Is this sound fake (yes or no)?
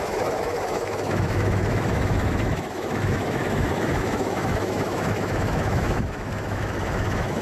yes